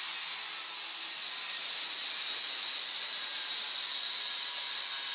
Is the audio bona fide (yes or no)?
yes